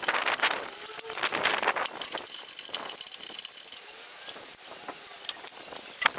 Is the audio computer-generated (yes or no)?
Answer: no